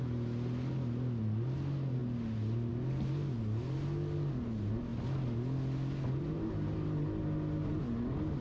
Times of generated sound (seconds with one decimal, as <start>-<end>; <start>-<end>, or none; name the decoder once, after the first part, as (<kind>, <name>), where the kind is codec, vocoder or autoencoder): none